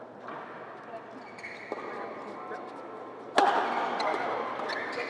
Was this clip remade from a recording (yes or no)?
no